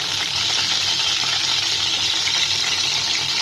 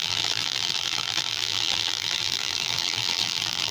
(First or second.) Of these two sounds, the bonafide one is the first